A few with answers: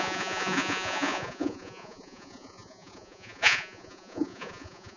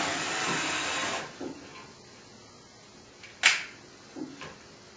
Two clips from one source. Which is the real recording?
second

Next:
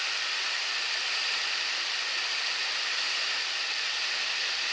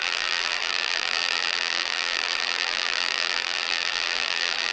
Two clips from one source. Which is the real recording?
first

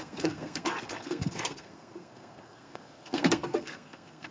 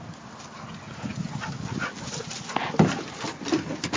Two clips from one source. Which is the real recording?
second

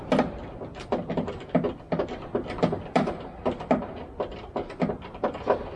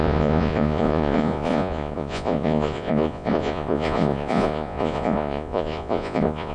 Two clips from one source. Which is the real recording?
first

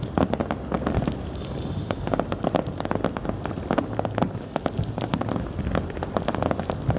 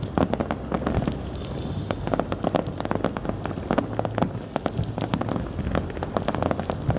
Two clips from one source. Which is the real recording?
second